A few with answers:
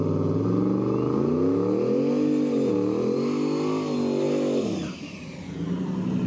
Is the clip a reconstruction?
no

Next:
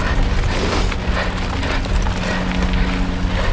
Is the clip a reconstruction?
no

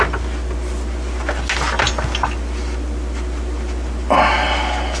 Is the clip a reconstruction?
no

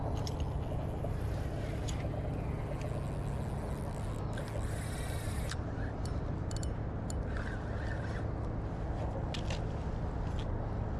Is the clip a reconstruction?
no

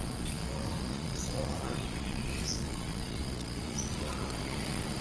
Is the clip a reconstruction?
yes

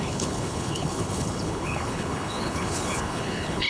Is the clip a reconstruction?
yes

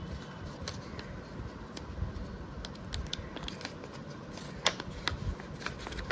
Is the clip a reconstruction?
no